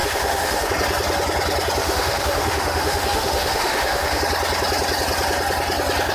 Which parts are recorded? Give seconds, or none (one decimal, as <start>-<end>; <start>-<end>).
0.7-1.8; 4.2-6.1